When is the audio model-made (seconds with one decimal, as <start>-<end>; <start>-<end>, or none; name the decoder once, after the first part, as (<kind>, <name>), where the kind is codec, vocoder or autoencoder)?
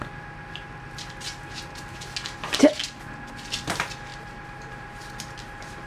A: none